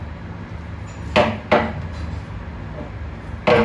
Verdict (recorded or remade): recorded